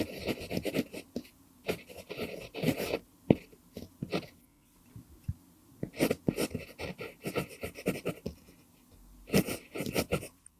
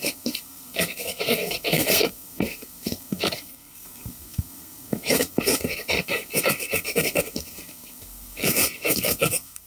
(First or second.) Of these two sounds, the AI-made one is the second